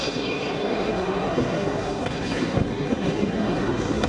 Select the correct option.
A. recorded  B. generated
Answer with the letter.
B